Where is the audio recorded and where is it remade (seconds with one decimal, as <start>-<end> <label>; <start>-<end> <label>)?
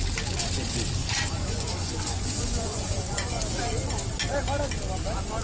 0.0-1.0 recorded; 1.0-3.6 remade; 3.6-5.4 recorded